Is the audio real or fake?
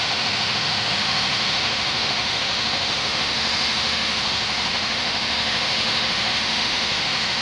fake